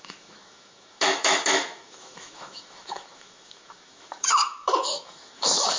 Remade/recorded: remade